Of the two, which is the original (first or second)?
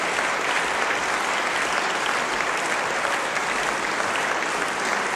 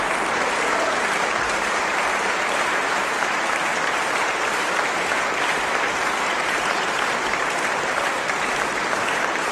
first